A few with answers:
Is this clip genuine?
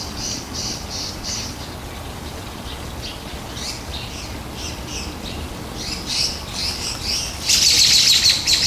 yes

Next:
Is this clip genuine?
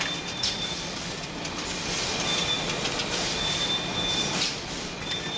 no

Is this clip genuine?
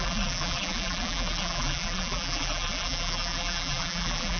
no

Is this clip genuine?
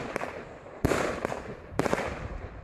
no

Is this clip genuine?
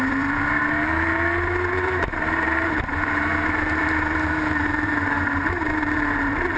no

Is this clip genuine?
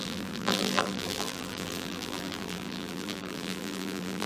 no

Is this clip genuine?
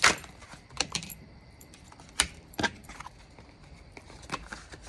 no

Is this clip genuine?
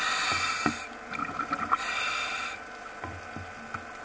yes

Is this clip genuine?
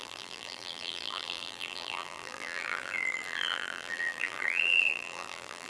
no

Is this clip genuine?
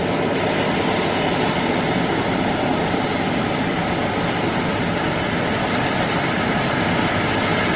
yes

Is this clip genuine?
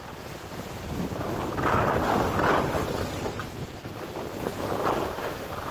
yes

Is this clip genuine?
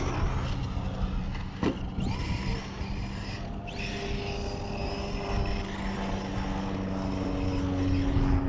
yes